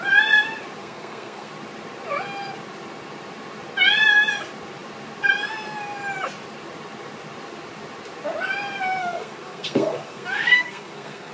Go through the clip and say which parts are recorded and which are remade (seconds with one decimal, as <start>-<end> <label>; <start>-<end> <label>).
0.0-0.8 recorded; 0.8-1.5 remade; 1.5-9.0 recorded; 9.0-11.3 remade